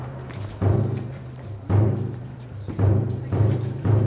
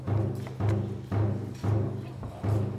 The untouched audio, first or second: second